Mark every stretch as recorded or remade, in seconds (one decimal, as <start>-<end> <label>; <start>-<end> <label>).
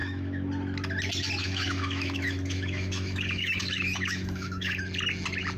0.0-0.5 remade; 0.5-1.4 recorded; 1.4-4.8 remade; 4.8-5.6 recorded